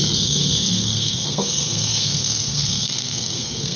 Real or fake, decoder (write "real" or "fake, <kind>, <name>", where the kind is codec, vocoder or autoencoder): fake, codec, SNAC